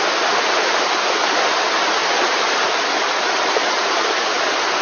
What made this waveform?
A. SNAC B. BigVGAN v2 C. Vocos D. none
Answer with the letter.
D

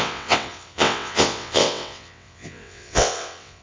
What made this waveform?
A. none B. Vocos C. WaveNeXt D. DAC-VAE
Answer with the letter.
C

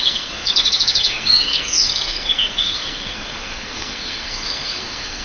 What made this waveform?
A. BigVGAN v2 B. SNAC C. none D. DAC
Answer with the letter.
B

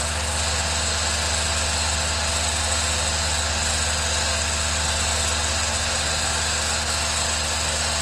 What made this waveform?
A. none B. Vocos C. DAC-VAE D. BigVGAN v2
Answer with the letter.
A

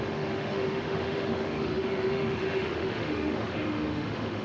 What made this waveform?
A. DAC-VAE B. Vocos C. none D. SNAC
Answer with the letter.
A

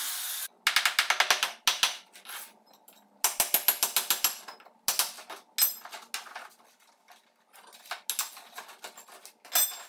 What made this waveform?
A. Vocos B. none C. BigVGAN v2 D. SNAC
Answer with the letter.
B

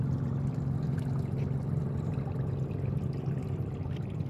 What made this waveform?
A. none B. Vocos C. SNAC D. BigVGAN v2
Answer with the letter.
A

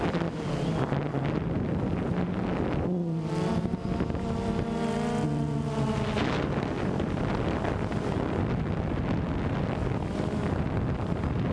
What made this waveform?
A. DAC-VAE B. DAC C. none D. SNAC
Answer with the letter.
C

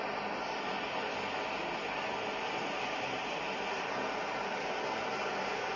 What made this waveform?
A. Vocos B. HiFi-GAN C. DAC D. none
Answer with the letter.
D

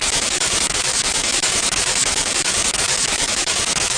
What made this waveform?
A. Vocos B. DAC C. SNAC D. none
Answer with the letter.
B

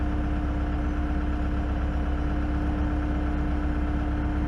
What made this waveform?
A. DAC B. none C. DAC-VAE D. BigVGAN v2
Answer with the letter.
B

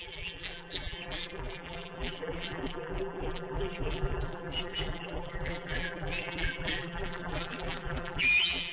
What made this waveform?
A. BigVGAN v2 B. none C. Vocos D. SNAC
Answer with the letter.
A